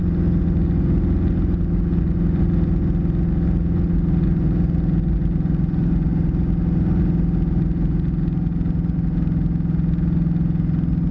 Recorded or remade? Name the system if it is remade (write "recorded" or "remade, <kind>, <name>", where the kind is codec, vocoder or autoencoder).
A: recorded